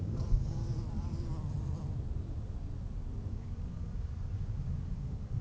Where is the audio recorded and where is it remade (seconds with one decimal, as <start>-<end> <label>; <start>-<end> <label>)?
0.0-0.6 remade; 0.6-3.3 recorded; 3.3-5.4 remade